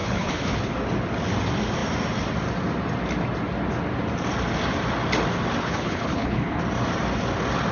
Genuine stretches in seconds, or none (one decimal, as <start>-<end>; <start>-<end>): 0.7-5.6; 6.6-7.7

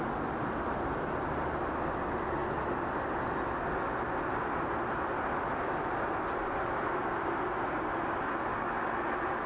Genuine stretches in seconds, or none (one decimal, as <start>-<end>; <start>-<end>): 0.0-9.5

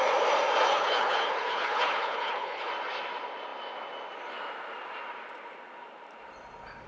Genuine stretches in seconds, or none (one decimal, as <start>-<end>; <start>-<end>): 0.0-0.7; 2.7-6.9

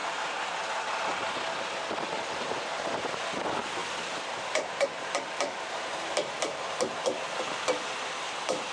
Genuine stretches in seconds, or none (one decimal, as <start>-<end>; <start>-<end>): 0.6-2.7; 3.3-3.8; 7.6-8.7

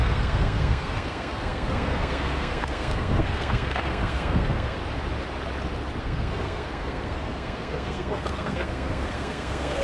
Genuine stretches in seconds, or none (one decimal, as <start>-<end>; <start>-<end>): 4.8-6.0

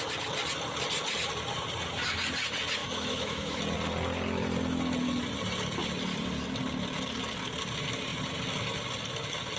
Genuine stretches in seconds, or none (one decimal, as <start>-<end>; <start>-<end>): 0.0-2.8; 3.6-9.6

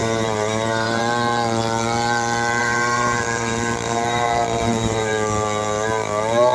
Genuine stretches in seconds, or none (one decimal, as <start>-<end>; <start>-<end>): 1.0-2.6; 5.1-6.5